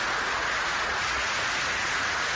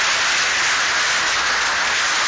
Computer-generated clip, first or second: first